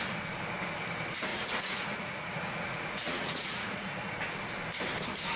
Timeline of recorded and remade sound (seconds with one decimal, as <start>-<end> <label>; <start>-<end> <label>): 0.0-1.3 recorded; 1.3-4.1 remade; 4.1-5.4 recorded